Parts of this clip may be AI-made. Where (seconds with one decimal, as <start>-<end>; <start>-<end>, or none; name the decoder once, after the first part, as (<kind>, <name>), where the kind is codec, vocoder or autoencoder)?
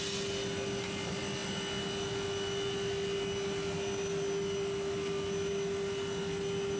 none